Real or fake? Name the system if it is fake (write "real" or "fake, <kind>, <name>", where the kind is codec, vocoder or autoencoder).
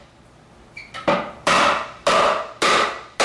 real